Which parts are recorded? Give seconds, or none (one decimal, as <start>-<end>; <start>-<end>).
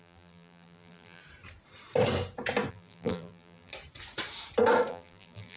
1.2-2.7; 3.7-4.9